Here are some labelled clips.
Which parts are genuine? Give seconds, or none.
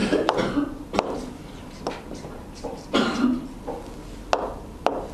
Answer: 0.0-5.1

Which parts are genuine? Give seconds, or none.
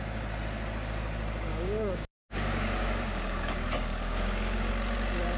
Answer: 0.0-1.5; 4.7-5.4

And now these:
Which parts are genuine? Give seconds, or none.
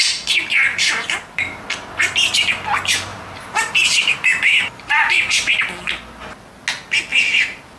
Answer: 0.0-0.7; 1.6-3.1; 5.5-7.1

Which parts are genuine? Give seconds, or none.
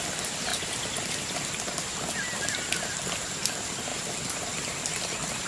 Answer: 0.0-3.9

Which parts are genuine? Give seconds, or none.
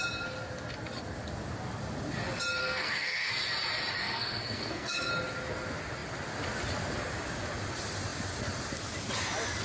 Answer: 0.0-2.6; 3.3-4.0; 5.1-9.6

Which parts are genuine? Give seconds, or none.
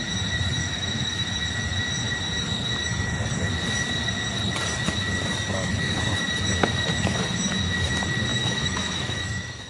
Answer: 0.0-0.6; 1.3-8.3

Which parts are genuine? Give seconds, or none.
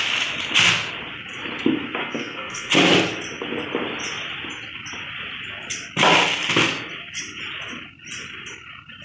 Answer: 0.0-2.0; 2.7-9.0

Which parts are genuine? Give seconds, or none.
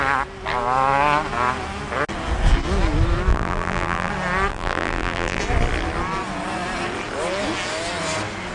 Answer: 0.0-3.3; 4.1-4.5; 5.4-8.5